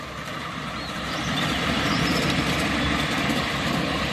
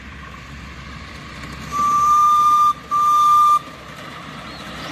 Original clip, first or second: second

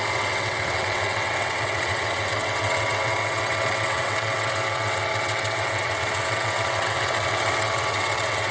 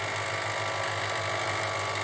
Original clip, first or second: second